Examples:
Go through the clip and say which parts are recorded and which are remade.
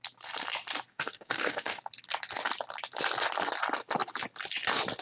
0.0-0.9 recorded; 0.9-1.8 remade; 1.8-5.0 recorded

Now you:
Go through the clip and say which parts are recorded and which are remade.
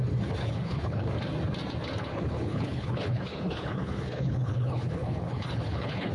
0.0-0.4 recorded; 0.4-1.1 remade; 1.1-2.1 recorded; 2.1-6.1 remade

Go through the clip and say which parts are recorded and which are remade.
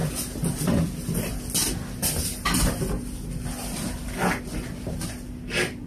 0.0-5.9 recorded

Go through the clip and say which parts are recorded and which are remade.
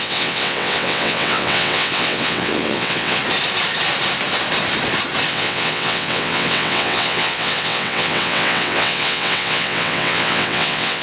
0.0-3.2 remade; 3.2-5.3 recorded; 5.3-11.0 remade